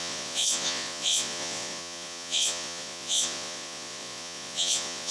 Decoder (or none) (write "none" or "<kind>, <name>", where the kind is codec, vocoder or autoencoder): vocoder, Vocos